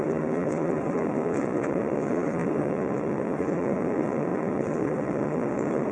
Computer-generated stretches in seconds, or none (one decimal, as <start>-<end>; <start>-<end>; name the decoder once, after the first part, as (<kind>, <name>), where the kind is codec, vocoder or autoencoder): 0.0-5.9 (vocoder, Vocos)

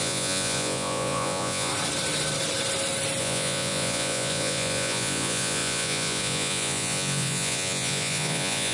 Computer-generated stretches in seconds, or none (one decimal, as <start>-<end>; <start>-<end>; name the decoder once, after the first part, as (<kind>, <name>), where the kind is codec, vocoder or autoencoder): 0.0-1.7 (vocoder, Vocos); 3.2-8.7

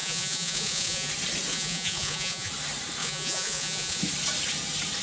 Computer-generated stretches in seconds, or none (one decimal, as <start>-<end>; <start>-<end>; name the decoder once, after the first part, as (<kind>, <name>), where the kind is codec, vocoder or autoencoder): 0.0-1.1 (vocoder, Vocos); 1.5-2.5; 3.0-4.0

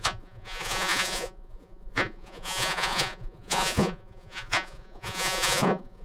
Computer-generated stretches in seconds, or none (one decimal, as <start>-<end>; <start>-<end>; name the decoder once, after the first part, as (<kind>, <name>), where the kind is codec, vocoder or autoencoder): 0.0-6.0 (vocoder, Vocos)

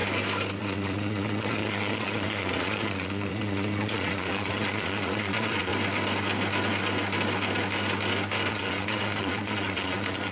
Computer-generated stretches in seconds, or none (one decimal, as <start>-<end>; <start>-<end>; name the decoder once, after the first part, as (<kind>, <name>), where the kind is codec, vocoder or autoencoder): 0.6-5.7 (vocoder, Vocos); 8.5-10.3

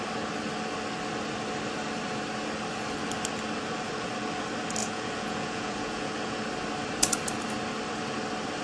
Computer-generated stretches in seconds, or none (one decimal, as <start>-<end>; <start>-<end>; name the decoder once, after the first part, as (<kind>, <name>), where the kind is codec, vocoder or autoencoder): 4.8-6.4 (vocoder, Vocos)

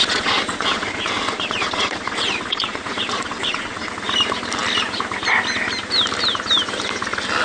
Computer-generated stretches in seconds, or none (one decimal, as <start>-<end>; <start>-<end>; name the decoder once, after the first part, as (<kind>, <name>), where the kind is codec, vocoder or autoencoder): 0.0-3.9 (vocoder, Vocos)